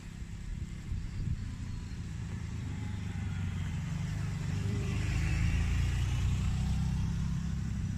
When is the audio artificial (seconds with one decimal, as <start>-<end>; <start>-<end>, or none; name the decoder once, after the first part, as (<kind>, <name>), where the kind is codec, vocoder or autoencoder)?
0.5-5.3 (vocoder, BigVGAN v2)